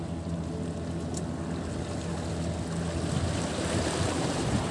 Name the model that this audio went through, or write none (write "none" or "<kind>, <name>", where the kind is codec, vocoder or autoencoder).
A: none